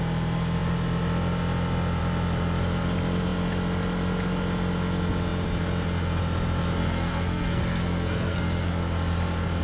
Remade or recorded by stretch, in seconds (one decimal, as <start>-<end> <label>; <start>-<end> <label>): 0.0-6.8 recorded; 6.8-8.8 remade; 8.8-9.6 recorded